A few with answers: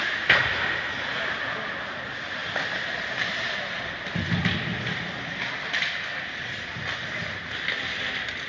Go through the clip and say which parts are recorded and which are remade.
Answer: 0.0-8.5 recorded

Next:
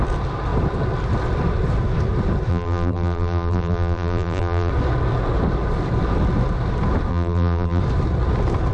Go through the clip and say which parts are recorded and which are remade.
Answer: 0.0-2.5 recorded; 2.5-4.7 remade; 4.7-7.1 recorded; 7.1-7.8 remade; 7.8-8.7 recorded

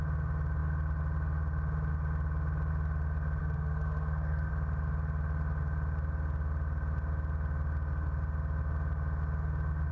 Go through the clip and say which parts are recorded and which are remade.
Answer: 0.0-3.4 recorded; 3.4-4.5 remade; 4.5-9.9 recorded

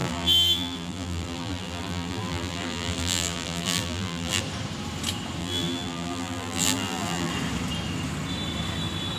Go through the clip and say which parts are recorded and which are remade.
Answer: 0.0-4.4 remade; 4.4-5.4 recorded; 5.4-7.3 remade; 7.3-9.2 recorded

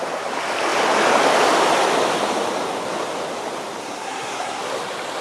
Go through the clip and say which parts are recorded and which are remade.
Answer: 0.0-3.8 recorded; 3.8-4.6 remade; 4.6-5.2 recorded

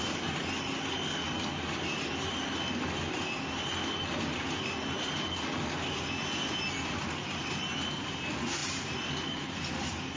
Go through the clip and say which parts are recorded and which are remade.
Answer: 0.0-10.2 recorded